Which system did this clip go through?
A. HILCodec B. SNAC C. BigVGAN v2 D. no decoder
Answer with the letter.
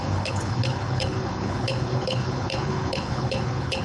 A